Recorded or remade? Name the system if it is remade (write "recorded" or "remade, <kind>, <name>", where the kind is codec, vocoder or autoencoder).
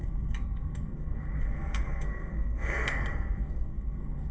remade, codec, SNAC